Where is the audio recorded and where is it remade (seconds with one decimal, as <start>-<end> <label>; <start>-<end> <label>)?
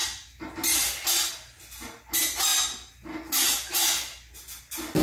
0.0-5.0 recorded